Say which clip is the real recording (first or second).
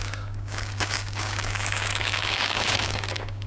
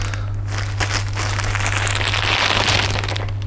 second